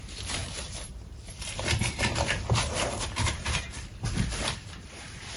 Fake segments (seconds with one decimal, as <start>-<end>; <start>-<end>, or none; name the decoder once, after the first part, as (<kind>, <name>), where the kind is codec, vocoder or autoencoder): 0.0-5.4 (vocoder, BigVGAN v2)